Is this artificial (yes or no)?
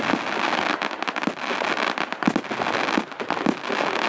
no